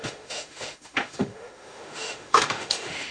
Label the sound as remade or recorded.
remade